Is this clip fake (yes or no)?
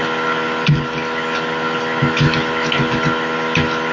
no